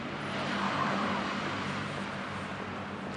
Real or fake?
fake